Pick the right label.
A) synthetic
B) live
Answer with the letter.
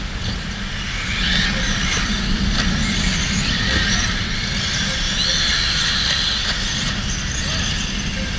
B